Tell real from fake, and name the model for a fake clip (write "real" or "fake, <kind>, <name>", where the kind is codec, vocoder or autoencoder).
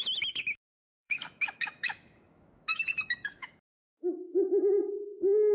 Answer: fake, autoencoder, DAC-VAE